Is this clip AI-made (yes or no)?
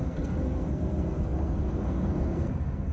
yes